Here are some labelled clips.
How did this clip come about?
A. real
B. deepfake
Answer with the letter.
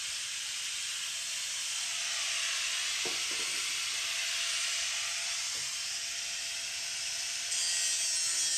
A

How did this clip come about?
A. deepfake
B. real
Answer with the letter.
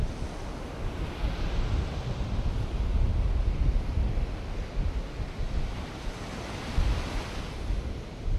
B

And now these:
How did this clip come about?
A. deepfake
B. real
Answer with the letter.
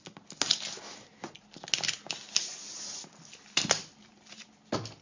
B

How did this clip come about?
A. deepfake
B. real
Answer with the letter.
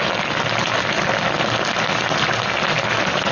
B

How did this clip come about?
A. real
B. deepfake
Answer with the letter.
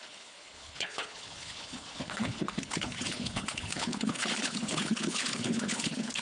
B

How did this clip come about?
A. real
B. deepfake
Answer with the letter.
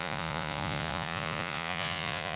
B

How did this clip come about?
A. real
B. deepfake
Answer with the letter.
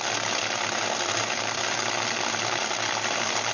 A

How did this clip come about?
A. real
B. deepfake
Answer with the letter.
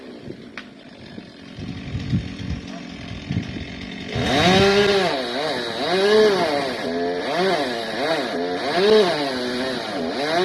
A